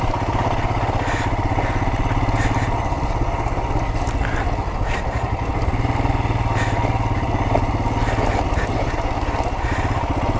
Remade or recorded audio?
recorded